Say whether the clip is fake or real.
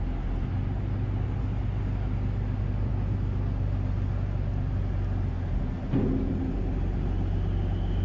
real